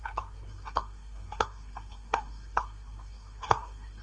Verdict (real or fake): fake